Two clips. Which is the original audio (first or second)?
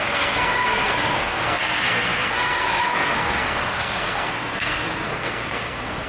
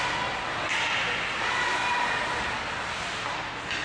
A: second